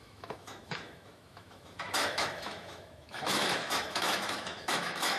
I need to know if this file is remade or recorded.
remade